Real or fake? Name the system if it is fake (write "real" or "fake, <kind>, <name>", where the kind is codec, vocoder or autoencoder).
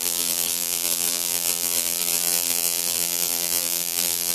fake, vocoder, BigVGAN v2